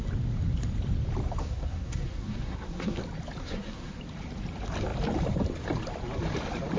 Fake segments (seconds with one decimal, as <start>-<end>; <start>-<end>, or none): 1.4-3.0; 3.4-4.0